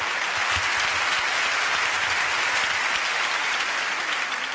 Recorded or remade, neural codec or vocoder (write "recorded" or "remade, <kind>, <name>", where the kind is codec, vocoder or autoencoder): recorded